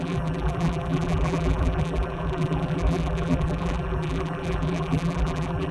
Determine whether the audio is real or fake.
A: fake